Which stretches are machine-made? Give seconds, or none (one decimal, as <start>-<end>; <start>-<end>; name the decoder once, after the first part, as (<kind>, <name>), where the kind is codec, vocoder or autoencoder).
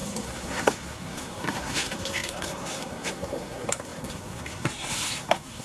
0.0-5.6 (codec, SNAC)